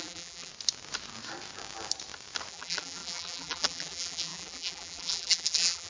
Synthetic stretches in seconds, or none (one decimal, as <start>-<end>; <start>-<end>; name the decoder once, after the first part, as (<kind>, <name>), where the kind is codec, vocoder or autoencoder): 0.0-0.5 (vocoder, BigVGAN v2); 2.5-5.9